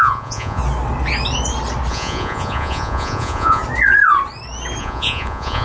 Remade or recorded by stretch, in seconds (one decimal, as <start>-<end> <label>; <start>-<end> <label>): 0.0-0.6 remade; 0.6-1.9 recorded; 1.9-3.6 remade; 3.6-4.8 recorded; 4.8-5.6 remade